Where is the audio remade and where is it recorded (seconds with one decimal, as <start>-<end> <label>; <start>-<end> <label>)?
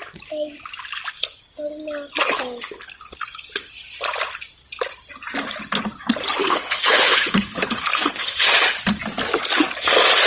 0.0-2.2 recorded; 2.2-3.2 remade; 3.2-6.4 recorded; 6.4-8.5 remade; 8.5-10.3 recorded